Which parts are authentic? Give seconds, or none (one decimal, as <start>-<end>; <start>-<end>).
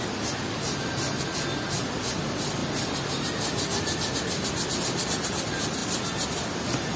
0.0-7.0